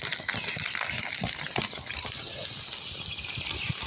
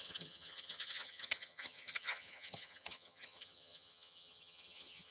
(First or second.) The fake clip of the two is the second